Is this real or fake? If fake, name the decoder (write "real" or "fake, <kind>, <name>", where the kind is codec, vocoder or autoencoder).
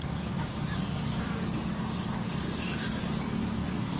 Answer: fake, codec, DAC